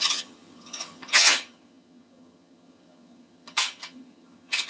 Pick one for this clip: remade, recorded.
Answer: remade